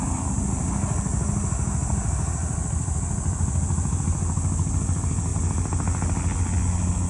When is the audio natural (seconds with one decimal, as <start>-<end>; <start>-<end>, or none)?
0.0-7.1